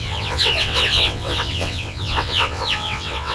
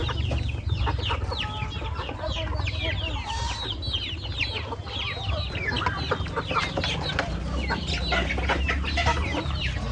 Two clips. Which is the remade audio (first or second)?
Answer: first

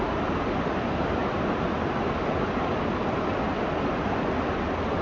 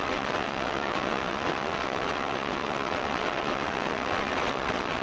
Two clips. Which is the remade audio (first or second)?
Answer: second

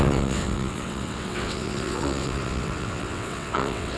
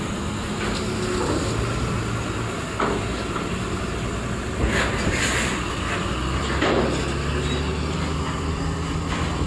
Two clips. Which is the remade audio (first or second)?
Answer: first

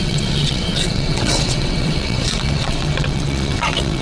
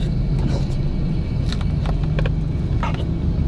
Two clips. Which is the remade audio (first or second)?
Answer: first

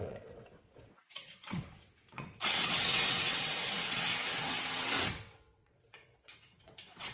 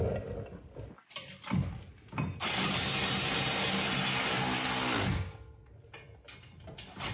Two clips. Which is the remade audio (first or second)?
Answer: first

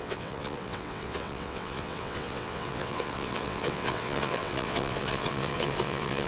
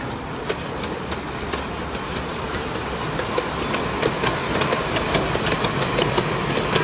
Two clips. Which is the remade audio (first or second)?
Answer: first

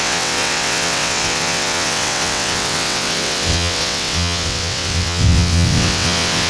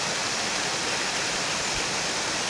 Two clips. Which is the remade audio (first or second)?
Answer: first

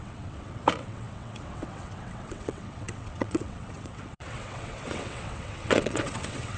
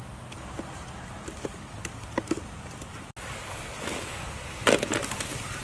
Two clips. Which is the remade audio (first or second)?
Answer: first